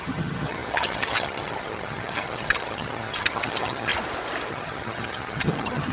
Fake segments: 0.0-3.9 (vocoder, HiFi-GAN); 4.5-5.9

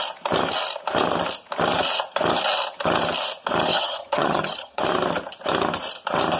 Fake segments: 3.7-4.8 (vocoder, HiFi-GAN)

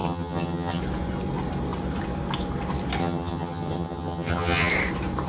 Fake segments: 0.0-0.8 (vocoder, HiFi-GAN); 3.0-4.7

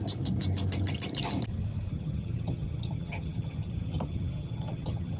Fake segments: 1.9-5.2 (vocoder, HiFi-GAN)

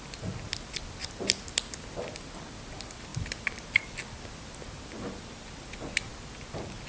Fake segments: none

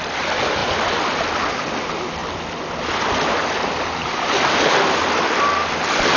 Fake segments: none

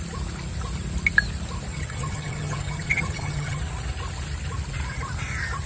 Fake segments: 1.7-3.6 (vocoder, HiFi-GAN)